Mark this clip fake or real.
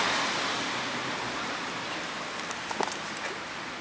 real